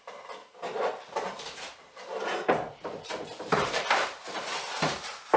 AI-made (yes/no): yes